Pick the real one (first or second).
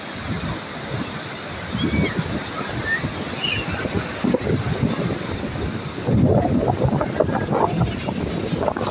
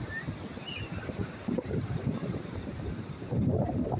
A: first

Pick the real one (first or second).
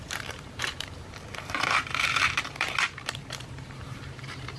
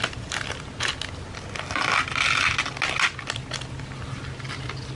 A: second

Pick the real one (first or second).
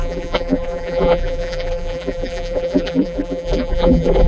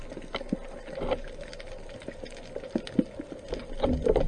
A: second